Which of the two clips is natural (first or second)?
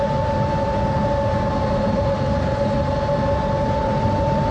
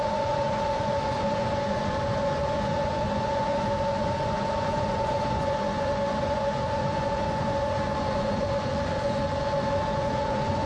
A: first